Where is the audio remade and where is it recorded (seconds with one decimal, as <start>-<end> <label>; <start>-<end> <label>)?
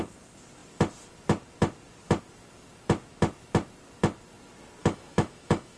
0.0-4.8 recorded; 4.8-5.8 remade